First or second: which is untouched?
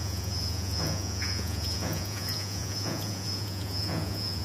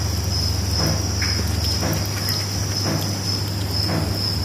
second